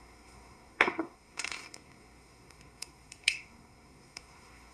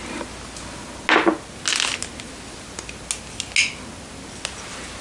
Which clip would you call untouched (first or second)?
second